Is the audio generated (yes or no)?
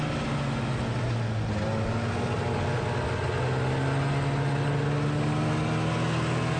no